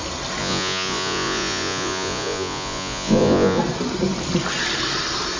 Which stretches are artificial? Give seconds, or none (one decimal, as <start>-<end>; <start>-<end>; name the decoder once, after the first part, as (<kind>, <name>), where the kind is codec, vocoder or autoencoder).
0.4-3.6 (vocoder, Vocos)